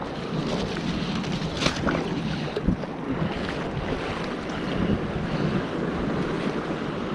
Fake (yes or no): no